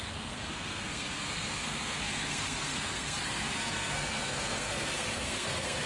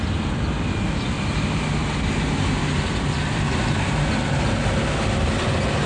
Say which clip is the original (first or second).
second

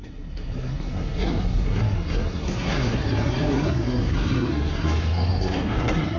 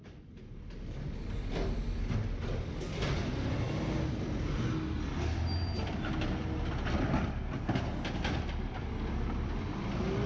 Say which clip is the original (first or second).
second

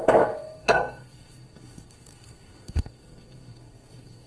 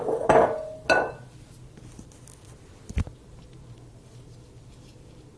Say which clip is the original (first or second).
second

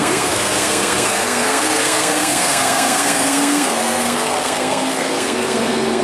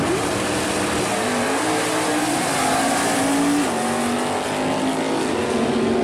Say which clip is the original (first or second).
second